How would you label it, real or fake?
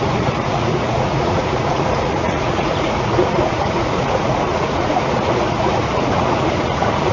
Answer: fake